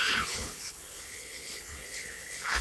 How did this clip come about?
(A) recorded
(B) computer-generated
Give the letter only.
B